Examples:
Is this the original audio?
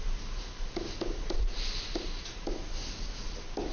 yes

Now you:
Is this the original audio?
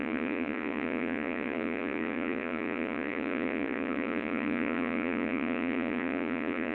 no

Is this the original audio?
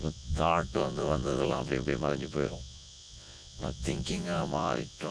no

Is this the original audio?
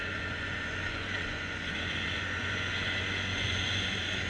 no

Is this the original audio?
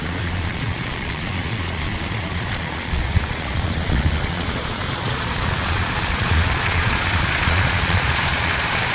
no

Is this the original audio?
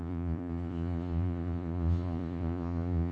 no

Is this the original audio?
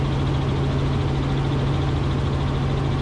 yes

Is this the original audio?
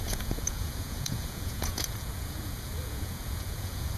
no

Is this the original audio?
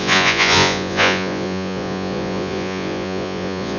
no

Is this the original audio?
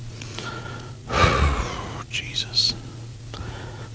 no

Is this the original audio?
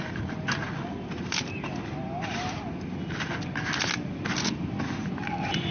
yes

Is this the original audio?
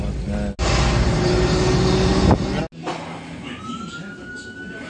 yes